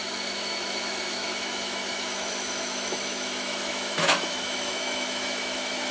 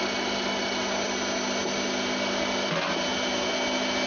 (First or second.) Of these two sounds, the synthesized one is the first